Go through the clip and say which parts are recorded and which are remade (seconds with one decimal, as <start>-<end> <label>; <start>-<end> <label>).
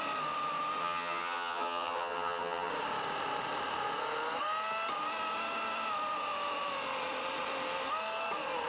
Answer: 0.0-0.8 recorded; 0.8-2.7 remade; 2.7-8.7 recorded